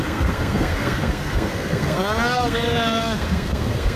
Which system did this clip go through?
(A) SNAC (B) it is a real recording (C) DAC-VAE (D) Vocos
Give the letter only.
A